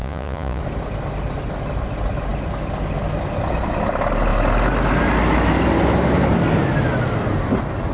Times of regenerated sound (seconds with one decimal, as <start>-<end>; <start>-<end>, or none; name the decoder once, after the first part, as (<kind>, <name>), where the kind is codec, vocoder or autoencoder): 0.0-0.6 (vocoder, Vocos)